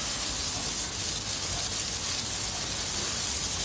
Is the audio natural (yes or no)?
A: yes